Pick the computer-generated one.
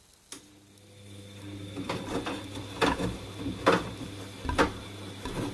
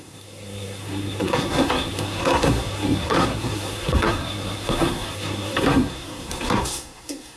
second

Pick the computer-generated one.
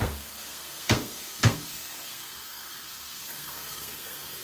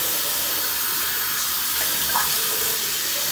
first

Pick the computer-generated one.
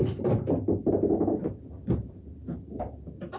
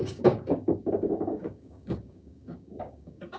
second